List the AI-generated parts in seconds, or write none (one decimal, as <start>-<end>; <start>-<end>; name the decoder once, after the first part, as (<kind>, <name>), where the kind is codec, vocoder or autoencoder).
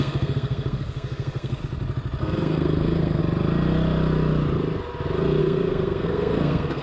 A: 0.0-1.6 (codec, SNAC); 2.2-3.2; 5.4-6.8